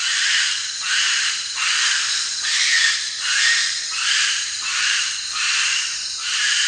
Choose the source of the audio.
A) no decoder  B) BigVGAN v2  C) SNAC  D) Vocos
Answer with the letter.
B